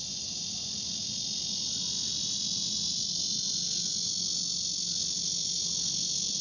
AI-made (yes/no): no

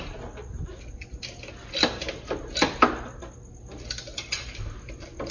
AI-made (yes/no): no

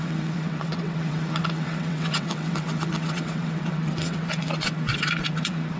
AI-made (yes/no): yes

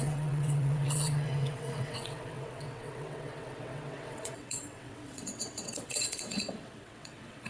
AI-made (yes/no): yes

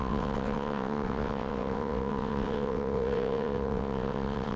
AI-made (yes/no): yes